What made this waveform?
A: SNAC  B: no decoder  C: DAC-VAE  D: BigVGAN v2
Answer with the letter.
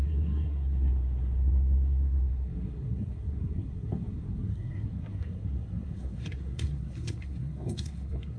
A